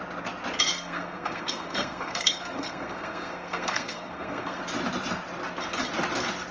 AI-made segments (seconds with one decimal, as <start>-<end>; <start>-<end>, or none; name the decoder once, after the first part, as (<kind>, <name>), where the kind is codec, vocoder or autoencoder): 0.7-4.6 (codec, SNAC)